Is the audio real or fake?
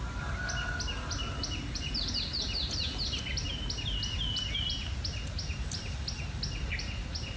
real